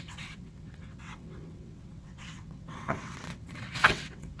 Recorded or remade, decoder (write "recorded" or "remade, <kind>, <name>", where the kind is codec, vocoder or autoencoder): remade, vocoder, WaveNeXt